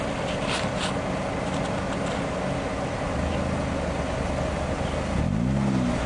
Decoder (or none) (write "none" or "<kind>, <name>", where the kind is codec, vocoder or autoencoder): none